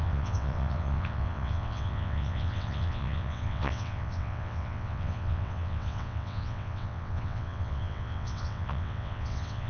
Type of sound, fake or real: fake